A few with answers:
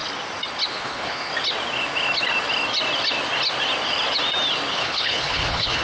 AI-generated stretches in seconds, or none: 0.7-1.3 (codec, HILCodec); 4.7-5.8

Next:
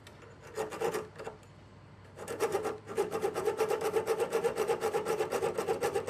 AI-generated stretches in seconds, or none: 1.7-5.4 (vocoder, BigVGAN v2)

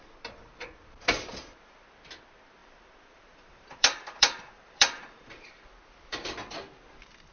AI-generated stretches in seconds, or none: 2.6-5.5 (vocoder, BigVGAN v2)

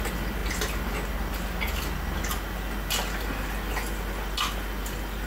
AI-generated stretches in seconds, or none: none

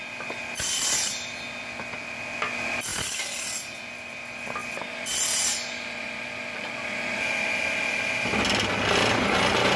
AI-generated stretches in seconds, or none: none